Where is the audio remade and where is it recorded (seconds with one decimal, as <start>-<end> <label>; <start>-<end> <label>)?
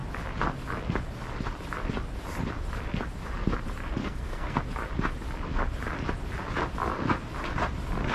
0.0-4.0 recorded; 4.0-4.6 remade; 4.6-8.1 recorded